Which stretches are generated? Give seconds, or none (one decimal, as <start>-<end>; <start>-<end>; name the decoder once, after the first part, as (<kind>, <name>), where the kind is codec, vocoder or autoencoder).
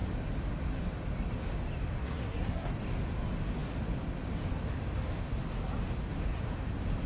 2.0-2.7 (codec, SNAC)